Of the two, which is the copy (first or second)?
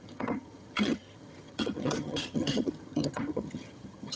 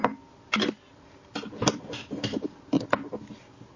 first